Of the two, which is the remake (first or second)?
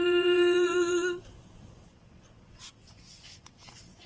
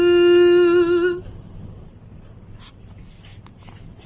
first